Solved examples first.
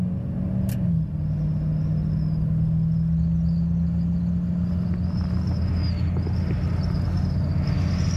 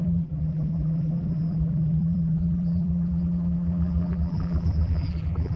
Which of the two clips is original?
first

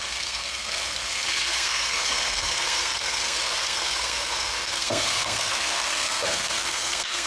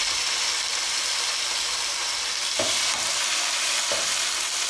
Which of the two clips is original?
second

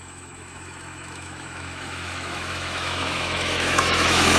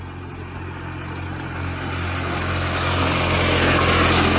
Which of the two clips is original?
second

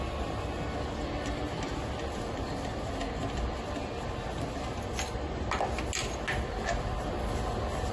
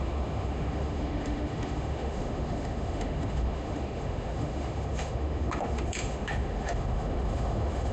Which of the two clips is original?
first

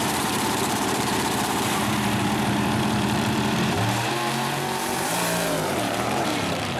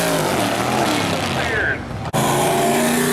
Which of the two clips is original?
second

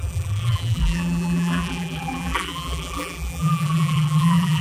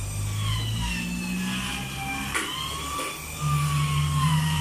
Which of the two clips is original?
second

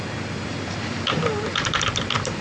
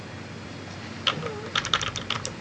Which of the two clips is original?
second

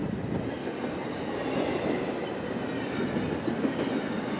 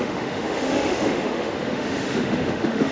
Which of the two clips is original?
first